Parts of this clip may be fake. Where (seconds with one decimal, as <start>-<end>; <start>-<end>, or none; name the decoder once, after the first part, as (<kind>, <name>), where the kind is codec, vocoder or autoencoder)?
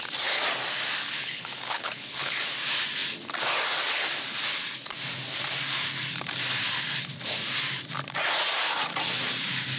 1.0-2.4 (codec, HILCodec)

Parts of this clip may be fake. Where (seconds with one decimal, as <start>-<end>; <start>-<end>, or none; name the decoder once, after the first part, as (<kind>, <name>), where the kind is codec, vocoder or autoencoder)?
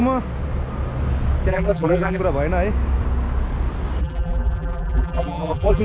1.5-2.2 (vocoder, BigVGAN v2); 4.0-5.8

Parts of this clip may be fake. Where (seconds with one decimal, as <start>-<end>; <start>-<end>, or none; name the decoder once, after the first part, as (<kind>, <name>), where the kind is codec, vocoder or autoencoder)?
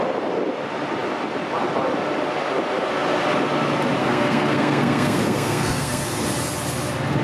4.0-6.2 (codec, SNAC)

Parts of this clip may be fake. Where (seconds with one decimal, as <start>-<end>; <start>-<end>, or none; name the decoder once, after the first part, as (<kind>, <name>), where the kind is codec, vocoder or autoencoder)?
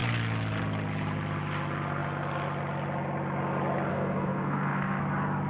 3.9-5.0 (codec, SNAC)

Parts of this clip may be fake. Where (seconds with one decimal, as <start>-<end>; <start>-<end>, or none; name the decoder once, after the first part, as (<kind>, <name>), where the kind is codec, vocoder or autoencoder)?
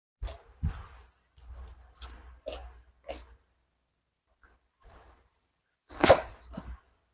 none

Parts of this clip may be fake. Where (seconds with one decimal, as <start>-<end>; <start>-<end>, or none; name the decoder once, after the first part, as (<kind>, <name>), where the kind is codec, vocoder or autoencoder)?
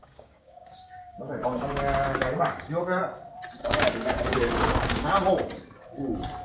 0.0-3.0 (codec, DAC); 3.6-5.1